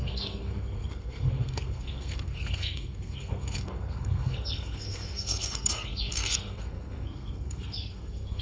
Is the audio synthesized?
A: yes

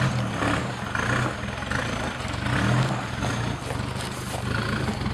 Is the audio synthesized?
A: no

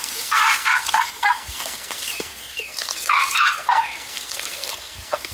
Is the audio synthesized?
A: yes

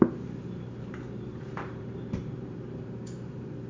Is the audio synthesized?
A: yes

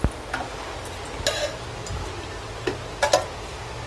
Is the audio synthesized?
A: no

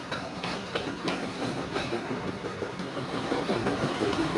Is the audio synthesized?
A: yes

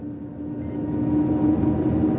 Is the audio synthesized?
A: no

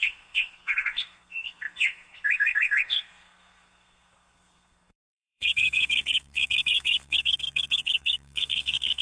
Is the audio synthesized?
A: yes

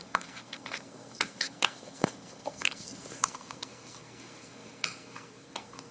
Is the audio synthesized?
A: yes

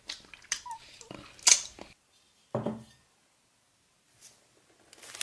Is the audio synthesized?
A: no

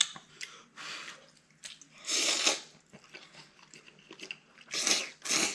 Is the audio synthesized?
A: no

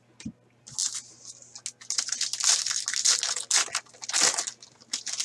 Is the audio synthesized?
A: no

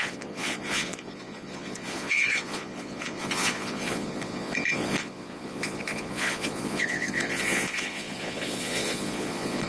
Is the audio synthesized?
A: yes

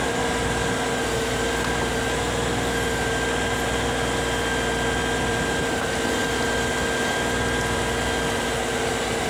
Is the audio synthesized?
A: no